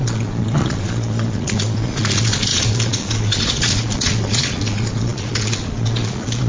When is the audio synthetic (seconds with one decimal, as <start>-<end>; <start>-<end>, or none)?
0.0-6.5